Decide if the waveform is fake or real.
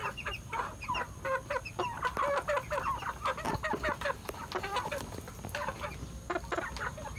real